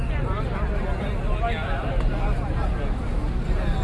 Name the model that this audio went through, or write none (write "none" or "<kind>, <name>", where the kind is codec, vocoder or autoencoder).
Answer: none